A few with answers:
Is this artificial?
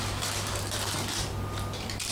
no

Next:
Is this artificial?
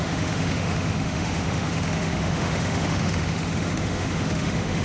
yes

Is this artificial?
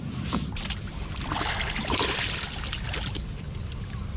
no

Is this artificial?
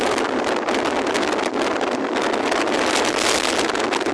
no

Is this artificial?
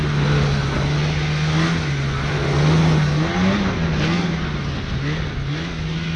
no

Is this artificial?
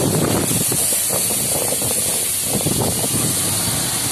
no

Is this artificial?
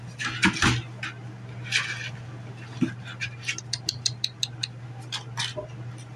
no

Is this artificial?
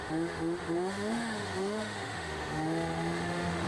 yes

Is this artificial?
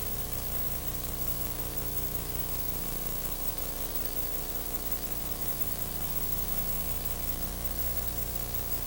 yes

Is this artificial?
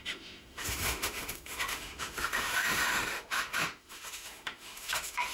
yes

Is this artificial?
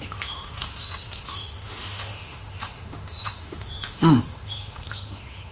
yes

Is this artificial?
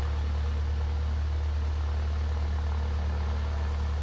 no